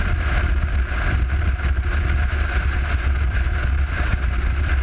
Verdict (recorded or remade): recorded